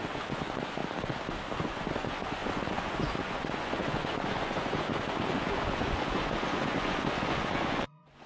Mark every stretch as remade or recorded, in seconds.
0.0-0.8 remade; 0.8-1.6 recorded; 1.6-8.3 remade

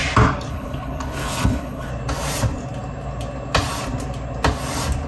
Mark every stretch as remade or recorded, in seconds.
0.0-0.5 recorded; 0.5-1.9 remade; 1.9-5.1 recorded